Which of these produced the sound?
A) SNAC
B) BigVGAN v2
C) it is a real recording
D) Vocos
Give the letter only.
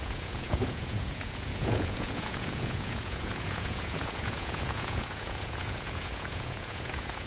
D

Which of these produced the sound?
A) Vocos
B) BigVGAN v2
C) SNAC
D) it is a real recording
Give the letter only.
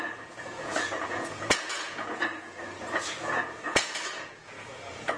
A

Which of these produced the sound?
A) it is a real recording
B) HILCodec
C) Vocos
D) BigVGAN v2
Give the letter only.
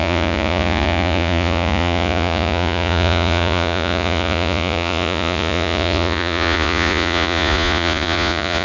C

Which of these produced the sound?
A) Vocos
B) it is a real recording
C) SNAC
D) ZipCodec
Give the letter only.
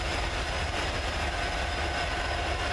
B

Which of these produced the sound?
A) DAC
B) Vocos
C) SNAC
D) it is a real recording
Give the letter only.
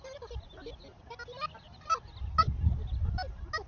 D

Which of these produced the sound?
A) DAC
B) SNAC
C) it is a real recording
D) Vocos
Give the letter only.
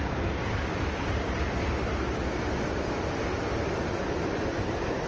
C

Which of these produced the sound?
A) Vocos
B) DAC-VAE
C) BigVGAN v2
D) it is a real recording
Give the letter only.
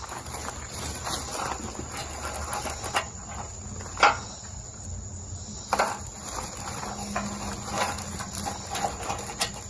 D